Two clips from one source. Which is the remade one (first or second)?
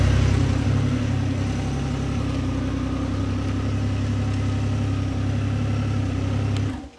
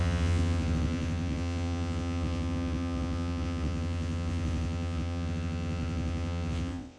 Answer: second